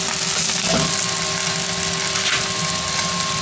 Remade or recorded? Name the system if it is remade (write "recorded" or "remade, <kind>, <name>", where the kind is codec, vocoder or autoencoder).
recorded